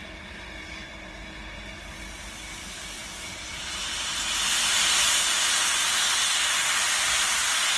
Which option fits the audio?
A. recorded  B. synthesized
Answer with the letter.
A